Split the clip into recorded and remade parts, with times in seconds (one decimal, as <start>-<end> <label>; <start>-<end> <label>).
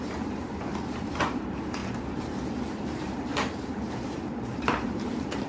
0.0-1.8 remade; 1.8-2.7 recorded; 2.7-3.3 remade; 3.3-4.0 recorded; 4.0-5.5 remade